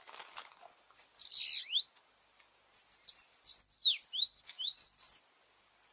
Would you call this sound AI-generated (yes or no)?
no